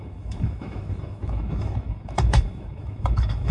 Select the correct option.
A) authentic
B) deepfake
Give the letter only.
B